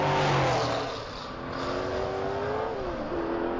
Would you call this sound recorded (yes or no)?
yes